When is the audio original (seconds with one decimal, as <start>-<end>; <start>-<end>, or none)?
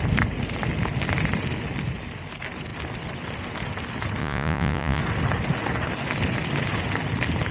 0.0-4.2; 5.0-7.5